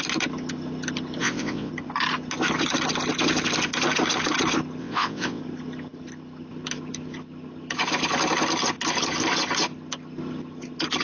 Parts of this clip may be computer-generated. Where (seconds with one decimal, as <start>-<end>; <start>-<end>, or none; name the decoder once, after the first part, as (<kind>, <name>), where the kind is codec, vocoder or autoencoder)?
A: 1.2-1.7 (vocoder, WaveNeXt); 4.8-5.4